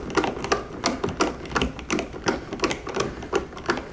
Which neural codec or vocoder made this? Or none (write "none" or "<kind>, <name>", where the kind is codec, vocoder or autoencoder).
none